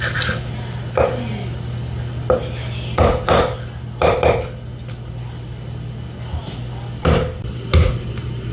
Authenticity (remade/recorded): recorded